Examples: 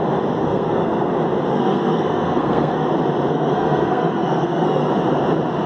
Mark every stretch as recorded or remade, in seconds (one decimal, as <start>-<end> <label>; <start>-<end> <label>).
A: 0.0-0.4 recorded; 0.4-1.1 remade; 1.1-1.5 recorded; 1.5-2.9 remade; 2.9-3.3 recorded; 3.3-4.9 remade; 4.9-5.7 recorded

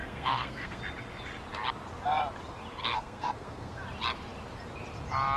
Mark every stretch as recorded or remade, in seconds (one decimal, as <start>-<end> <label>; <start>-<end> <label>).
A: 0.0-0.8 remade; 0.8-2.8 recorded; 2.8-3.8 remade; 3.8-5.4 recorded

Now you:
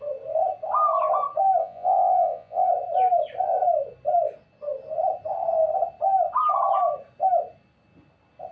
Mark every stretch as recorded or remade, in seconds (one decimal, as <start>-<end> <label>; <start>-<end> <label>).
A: 0.0-1.6 recorded; 1.6-2.7 remade; 2.7-8.5 recorded